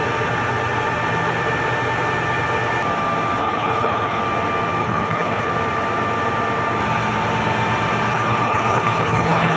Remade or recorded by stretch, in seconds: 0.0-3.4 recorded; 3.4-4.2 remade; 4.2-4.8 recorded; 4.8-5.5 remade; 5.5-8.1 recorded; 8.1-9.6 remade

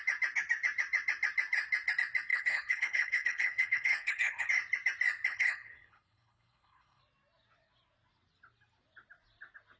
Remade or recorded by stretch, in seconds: 0.0-2.3 recorded; 2.3-4.5 remade; 4.5-5.3 recorded; 5.3-7.0 remade; 7.0-9.8 recorded